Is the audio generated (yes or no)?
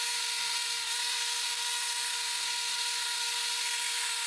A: yes